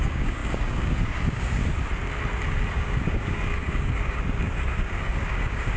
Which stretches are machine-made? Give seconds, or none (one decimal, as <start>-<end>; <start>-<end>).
0.0-1.6; 2.7-5.8